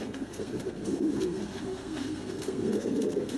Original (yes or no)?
no